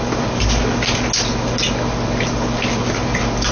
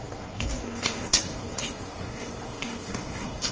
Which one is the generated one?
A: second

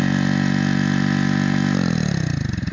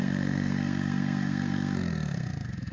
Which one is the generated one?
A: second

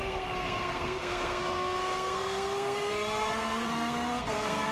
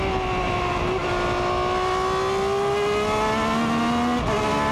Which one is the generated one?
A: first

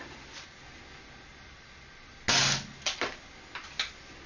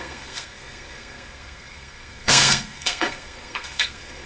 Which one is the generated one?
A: second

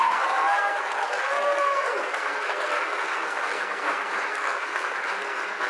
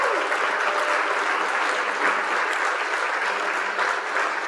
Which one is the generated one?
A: first